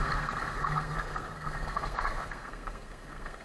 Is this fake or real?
fake